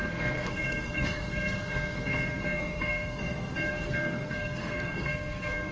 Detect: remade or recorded remade